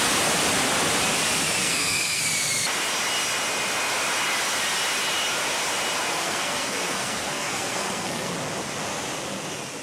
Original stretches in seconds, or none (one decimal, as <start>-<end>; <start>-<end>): 0.0-1.6; 2.2-6.1; 8.3-9.8